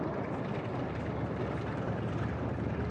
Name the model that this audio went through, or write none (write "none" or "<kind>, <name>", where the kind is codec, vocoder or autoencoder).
none